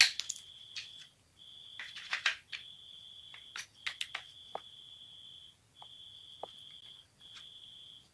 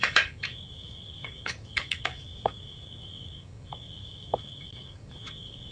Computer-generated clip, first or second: second